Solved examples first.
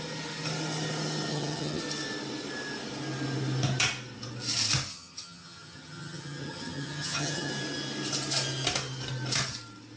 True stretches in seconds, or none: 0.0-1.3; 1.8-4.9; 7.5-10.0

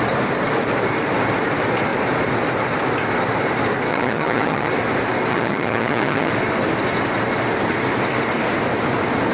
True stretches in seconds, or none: 0.0-3.9; 4.7-5.3; 6.3-9.3

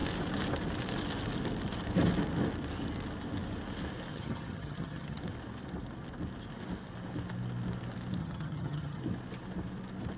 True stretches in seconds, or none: 0.0-4.1; 5.2-8.2; 9.0-10.2

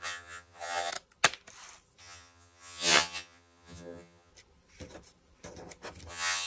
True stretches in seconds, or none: 0.9-2.0; 4.3-6.1

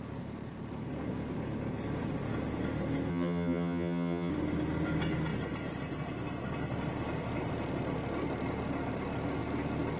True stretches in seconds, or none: 0.0-3.1; 4.3-10.0